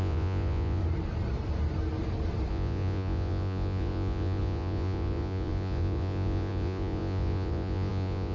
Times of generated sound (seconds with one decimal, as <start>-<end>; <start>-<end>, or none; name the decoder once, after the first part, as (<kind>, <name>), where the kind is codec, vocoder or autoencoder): 0.0-0.8 (vocoder, Vocos); 2.5-8.3